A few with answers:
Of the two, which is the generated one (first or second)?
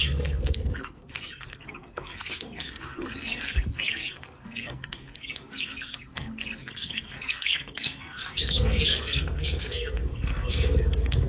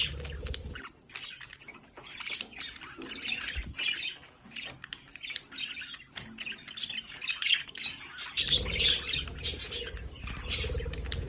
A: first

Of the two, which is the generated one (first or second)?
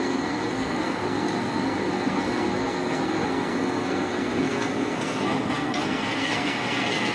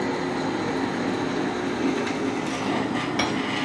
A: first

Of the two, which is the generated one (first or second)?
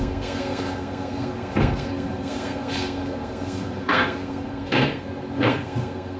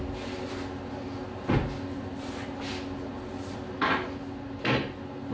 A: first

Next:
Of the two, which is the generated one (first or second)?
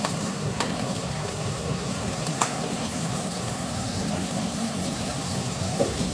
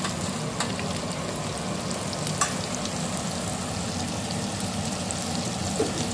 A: first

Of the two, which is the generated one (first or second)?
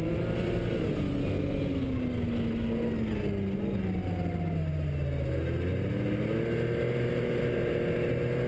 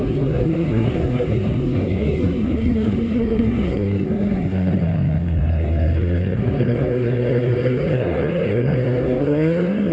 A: second